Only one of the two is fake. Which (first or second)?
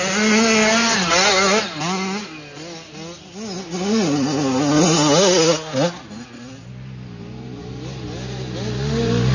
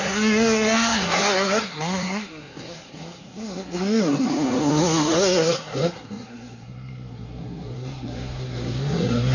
second